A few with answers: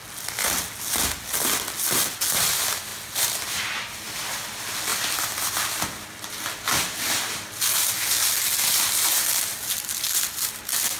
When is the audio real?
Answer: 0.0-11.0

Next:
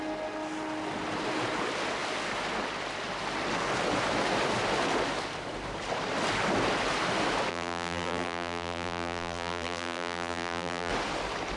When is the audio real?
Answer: 0.0-7.5; 10.9-11.6